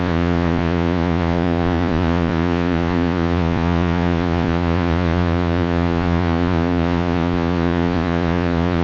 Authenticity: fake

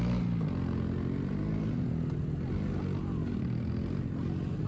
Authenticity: real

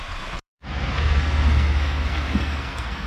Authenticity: fake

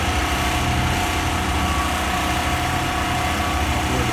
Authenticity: real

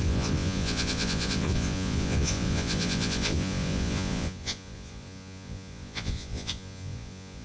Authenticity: fake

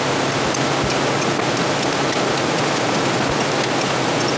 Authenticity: real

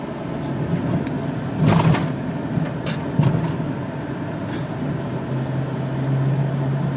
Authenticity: real